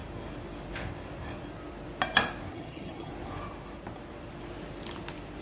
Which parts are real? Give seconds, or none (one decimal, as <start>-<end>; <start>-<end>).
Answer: 0.0-2.5; 3.1-5.4